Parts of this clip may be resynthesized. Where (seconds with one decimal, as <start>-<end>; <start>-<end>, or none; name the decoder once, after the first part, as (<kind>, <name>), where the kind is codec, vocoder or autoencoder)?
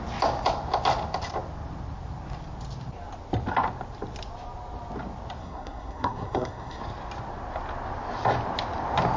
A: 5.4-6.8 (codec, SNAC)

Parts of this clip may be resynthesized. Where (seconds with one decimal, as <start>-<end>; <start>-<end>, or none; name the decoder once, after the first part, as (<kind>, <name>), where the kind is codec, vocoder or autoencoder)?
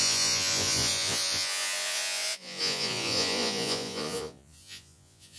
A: 0.0-5.4 (vocoder, Vocos)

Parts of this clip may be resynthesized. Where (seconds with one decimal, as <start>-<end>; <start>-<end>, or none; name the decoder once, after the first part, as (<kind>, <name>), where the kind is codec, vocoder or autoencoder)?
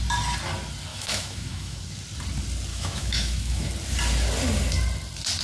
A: 0.9-1.8 (autoencoder, DAC-VAE); 2.7-3.7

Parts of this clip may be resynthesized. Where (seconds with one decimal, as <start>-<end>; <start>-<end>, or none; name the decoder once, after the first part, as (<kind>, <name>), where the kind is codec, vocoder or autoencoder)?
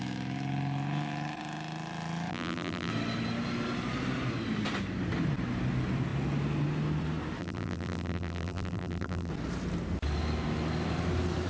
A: 2.3-2.9 (vocoder, BigVGAN v2); 7.4-9.3